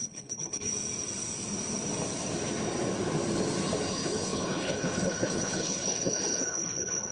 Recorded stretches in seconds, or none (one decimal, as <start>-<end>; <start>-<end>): 0.7-3.9

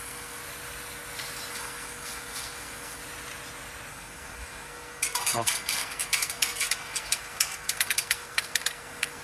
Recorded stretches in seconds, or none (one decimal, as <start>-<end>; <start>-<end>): 0.4-1.5; 3.0-3.9

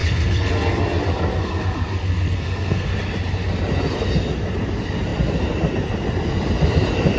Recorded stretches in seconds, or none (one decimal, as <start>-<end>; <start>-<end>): 0.5-1.4; 2.9-7.2

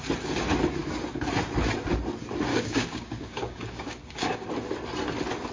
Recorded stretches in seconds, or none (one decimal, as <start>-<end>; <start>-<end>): 0.0-2.5; 4.5-5.5

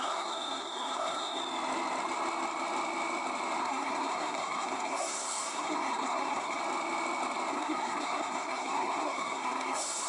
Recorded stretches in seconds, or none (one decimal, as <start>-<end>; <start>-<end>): 1.4-3.6; 6.6-7.5

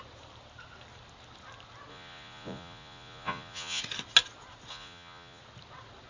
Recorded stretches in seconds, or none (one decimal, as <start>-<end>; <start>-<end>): 0.0-1.9; 3.8-4.7; 5.4-6.1